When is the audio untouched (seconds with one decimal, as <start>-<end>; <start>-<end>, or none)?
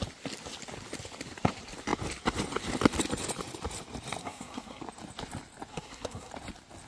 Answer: 0.0-4.2; 4.8-5.7; 6.3-6.9